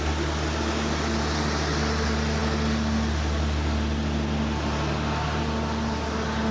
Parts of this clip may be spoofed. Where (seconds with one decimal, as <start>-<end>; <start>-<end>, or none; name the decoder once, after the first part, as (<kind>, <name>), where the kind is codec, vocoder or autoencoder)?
none